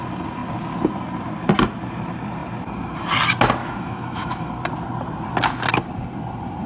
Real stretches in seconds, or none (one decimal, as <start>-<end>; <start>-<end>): 0.0-3.6; 4.5-6.7